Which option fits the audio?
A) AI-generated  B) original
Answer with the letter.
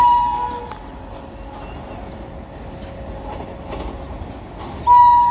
B